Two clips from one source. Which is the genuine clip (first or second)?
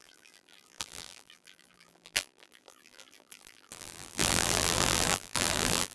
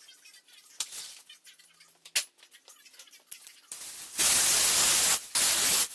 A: second